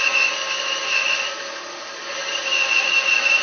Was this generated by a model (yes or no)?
no